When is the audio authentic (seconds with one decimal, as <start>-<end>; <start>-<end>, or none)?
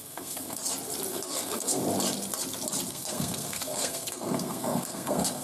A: 0.6-1.1; 1.8-2.9